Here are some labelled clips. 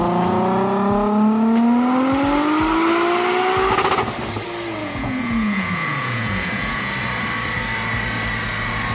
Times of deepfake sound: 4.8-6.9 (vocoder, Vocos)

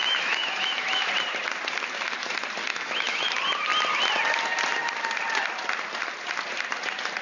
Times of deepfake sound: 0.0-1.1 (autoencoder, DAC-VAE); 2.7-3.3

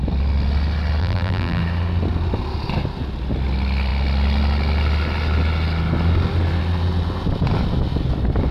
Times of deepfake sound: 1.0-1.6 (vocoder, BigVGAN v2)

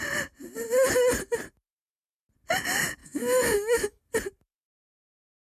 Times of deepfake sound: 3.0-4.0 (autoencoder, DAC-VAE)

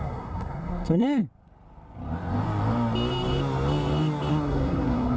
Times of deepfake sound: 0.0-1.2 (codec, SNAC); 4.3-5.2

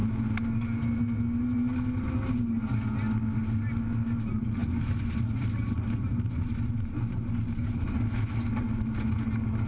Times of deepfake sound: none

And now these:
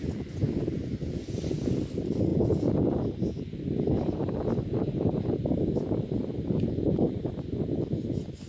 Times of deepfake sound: 2.3-2.9 (vocoder, Vocos)